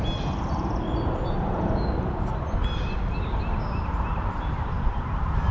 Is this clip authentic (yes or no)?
yes